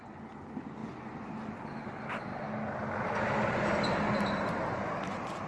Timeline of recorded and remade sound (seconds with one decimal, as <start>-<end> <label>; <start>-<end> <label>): 0.0-5.5 recorded